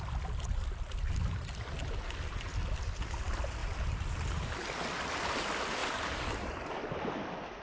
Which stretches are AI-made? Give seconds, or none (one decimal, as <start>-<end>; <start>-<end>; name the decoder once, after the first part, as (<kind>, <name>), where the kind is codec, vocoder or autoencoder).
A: 3.6-4.7 (vocoder, BigVGAN v2); 5.8-7.6